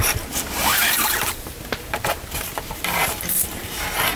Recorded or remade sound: remade